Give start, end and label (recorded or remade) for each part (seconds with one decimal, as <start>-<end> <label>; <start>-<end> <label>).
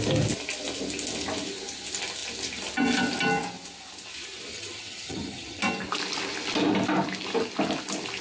0.0-4.5 recorded; 4.5-5.6 remade; 5.6-8.2 recorded